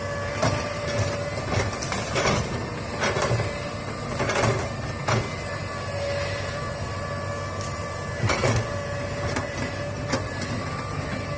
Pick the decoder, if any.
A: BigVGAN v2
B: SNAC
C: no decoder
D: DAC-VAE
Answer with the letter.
C